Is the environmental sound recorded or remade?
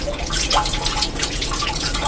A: remade